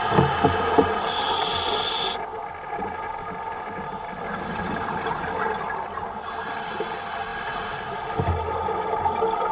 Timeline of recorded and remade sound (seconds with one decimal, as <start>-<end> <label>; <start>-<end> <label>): 0.0-9.5 recorded